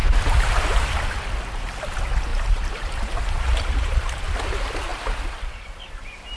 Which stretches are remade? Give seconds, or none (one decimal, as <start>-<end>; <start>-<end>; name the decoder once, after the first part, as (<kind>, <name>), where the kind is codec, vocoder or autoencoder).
0.0-1.2 (vocoder, BigVGAN v2); 2.3-4.3